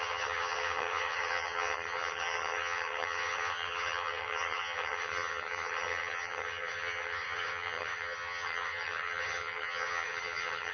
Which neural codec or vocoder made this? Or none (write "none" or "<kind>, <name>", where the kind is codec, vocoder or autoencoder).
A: vocoder, HiFi-GAN